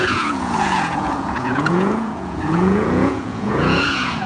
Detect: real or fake fake